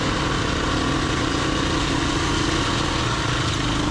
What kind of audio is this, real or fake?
real